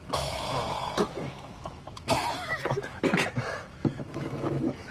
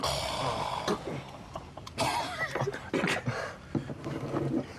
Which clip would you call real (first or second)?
second